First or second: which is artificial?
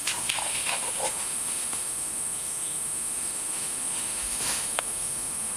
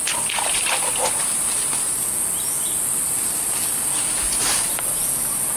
first